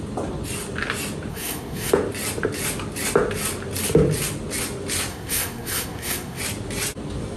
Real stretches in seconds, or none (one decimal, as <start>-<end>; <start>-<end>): 0.0-1.3; 1.9-5.1; 6.4-7.4